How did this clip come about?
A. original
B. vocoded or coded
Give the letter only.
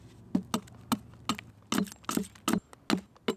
A